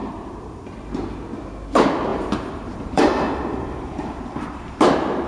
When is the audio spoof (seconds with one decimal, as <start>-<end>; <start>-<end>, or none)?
0.0-0.9; 2.1-4.8

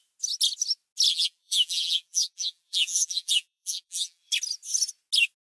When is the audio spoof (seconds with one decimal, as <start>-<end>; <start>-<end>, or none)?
1.1-4.3

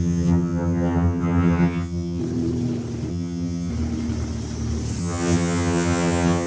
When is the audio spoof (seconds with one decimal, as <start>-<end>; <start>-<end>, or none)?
0.0-2.2; 3.1-3.7; 5.0-6.5

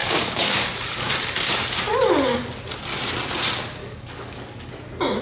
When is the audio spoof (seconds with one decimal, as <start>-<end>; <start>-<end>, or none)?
0.0-1.1; 1.9-2.5; 3.8-4.7

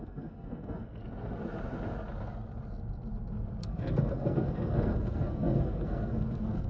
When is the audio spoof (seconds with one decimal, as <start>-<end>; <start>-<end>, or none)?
0.0-1.0; 3.6-6.7

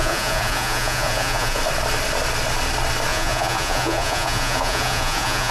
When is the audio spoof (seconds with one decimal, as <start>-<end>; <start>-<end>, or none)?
0.0-1.6; 3.1-5.5